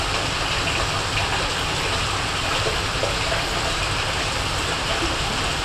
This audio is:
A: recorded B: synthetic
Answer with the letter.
A